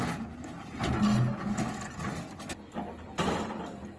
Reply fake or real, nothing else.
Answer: real